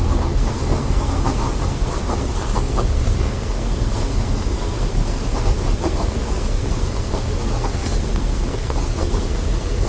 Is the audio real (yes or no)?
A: no